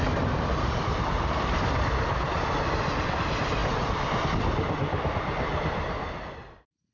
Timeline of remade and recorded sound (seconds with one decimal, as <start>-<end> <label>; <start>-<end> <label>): 0.0-6.9 recorded